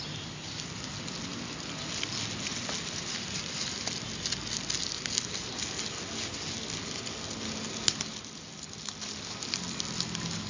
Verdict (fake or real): real